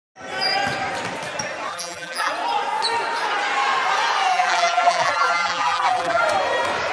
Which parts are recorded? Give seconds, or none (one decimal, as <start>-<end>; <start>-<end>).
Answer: 0.0-1.7; 2.3-4.3; 6.2-6.9